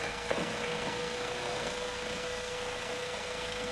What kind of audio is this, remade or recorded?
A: remade